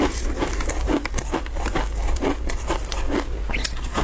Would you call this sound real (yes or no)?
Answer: yes